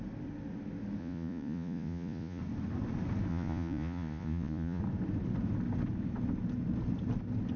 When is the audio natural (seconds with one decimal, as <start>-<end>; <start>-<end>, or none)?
0.0-1.0; 2.4-3.3; 4.8-7.6